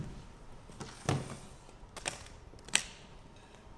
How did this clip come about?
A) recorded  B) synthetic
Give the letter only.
A